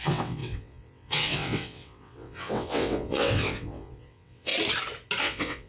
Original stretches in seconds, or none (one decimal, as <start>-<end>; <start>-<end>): 4.5-5.2